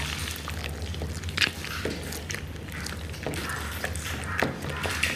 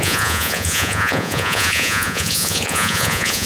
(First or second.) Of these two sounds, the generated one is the second